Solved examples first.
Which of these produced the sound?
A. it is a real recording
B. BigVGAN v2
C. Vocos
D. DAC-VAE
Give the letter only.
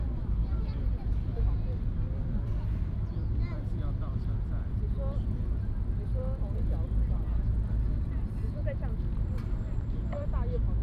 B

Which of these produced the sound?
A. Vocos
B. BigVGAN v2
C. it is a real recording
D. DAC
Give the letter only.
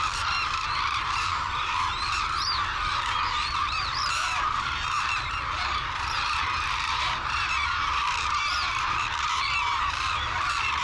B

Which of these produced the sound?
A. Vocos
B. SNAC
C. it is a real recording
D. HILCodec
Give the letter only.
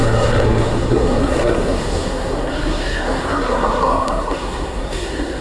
B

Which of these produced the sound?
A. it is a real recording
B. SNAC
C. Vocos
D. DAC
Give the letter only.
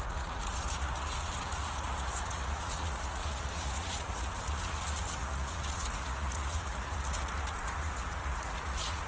C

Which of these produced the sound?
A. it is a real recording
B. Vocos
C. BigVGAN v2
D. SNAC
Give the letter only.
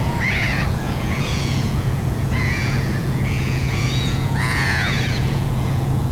B